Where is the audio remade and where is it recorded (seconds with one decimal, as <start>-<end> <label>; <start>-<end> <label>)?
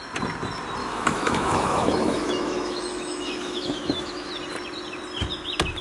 0.0-0.8 recorded; 0.8-4.3 remade; 4.3-5.8 recorded